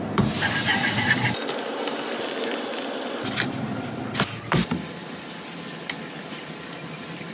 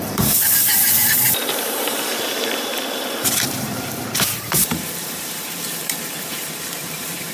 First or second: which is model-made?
second